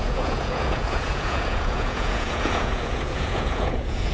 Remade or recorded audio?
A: remade